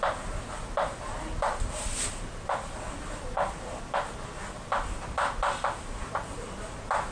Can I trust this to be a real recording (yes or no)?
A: yes